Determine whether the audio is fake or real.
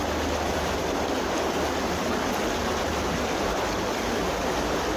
real